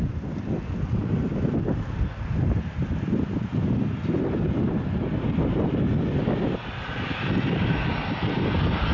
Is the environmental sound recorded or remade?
recorded